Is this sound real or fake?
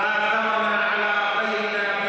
real